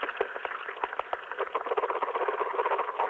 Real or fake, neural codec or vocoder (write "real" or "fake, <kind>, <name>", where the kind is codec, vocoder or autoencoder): real